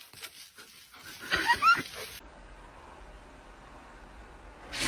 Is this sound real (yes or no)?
yes